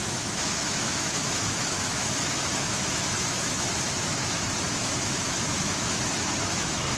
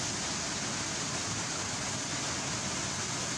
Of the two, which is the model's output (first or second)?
first